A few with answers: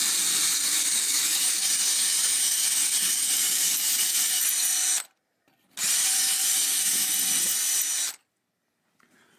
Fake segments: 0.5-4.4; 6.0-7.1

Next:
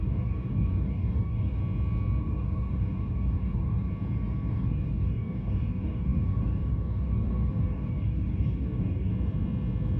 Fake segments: 0.0-1.6; 2.2-3.9; 4.5-9.1

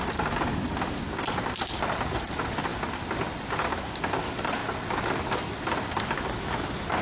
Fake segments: none

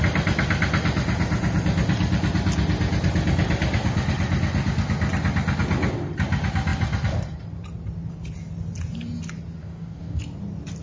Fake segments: 9.6-10.2